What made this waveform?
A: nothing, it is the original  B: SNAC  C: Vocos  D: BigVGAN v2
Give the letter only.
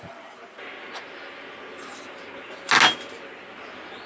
A